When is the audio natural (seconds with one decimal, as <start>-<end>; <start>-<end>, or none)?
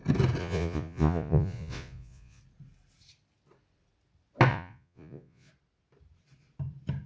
0.0-0.4; 2.4-4.5; 5.5-7.1